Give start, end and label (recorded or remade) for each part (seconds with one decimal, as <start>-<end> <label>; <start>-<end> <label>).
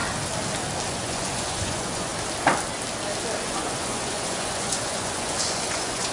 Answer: 0.0-0.9 recorded; 0.9-2.1 remade; 2.1-3.4 recorded; 3.4-6.1 remade